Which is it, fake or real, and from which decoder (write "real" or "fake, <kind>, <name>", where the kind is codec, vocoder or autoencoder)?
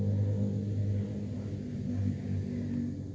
real